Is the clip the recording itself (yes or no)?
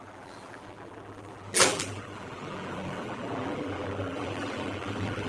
no